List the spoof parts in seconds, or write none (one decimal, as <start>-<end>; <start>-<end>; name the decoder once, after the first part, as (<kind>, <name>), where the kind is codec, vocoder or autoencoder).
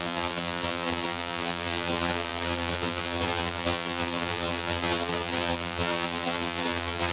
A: 0.0-7.1 (vocoder, BigVGAN v2)